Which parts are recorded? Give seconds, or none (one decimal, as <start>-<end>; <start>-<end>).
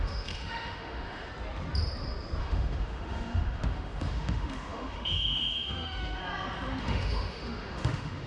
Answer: 1.3-2.4; 6.2-6.8